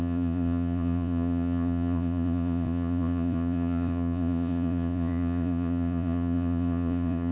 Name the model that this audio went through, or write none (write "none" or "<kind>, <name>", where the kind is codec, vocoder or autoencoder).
vocoder, Vocos